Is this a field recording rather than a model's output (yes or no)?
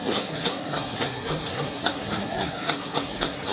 no